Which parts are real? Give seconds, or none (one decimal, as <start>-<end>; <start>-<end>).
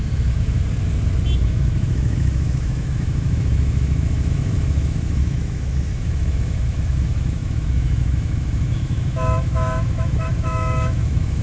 0.6-1.4